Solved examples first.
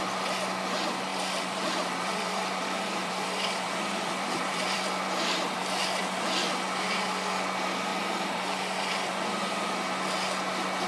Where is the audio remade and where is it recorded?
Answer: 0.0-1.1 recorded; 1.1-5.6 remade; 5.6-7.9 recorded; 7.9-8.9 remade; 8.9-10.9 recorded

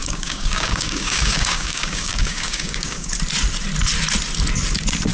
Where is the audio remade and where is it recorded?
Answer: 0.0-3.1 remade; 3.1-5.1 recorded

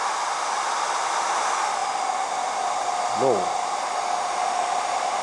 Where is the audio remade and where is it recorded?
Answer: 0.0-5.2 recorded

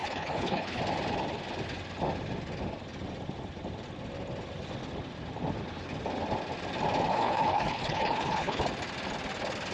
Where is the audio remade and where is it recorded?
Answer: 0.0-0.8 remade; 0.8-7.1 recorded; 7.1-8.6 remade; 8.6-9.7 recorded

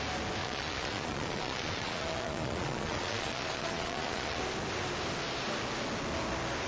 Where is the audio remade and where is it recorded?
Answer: 0.0-0.4 recorded; 0.4-4.4 remade; 4.4-6.7 recorded